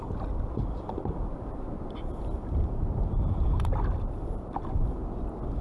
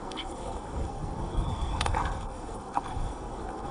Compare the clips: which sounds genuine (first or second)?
first